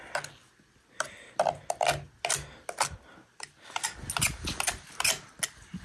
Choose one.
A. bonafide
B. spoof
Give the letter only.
A